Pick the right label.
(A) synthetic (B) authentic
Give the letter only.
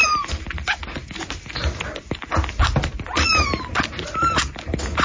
B